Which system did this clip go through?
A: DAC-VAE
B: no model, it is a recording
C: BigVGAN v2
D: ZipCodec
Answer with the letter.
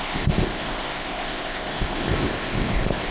D